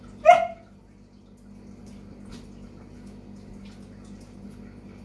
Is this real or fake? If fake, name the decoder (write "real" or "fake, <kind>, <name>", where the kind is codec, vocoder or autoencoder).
real